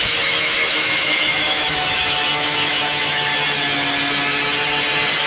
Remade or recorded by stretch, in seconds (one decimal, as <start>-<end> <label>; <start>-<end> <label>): 0.0-3.3 remade; 3.3-5.3 recorded